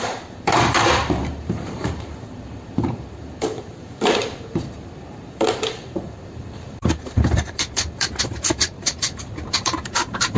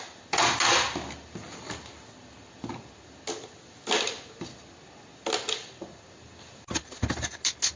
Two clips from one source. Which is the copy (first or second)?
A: first